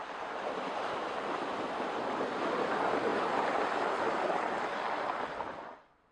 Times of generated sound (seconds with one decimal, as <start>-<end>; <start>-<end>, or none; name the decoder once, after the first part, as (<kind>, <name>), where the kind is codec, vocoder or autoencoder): none